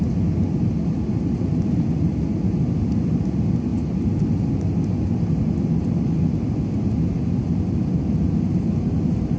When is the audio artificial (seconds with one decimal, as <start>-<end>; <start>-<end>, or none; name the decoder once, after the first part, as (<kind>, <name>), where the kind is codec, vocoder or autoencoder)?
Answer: none